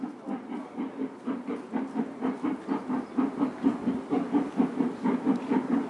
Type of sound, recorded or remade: recorded